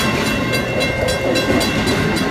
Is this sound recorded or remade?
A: recorded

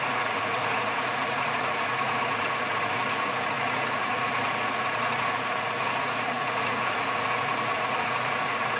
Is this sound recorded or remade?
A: remade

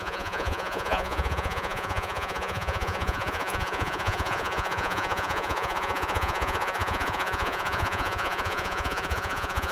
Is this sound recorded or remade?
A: remade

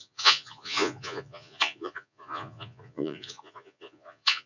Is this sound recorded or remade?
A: remade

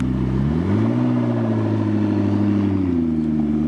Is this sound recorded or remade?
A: recorded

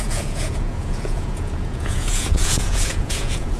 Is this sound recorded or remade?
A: remade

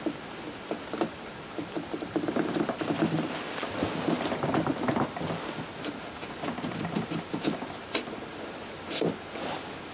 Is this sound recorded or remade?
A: recorded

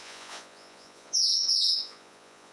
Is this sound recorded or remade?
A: remade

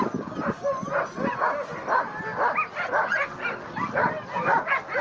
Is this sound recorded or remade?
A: recorded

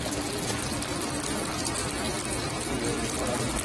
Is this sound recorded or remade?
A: recorded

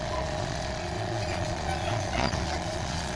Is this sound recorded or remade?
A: remade